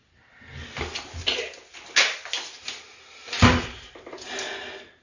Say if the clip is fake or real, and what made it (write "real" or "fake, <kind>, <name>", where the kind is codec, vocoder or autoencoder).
real